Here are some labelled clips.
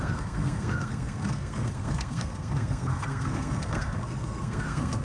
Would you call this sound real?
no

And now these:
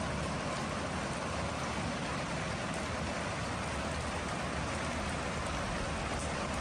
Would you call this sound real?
yes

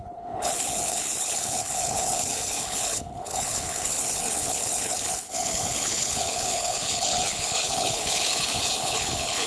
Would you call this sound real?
no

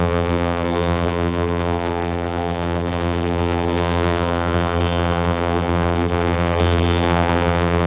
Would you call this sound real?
no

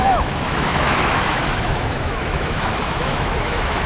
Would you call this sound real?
no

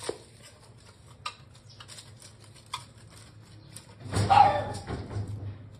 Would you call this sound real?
yes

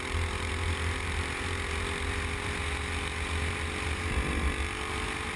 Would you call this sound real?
yes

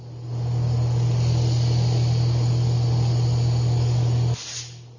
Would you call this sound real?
yes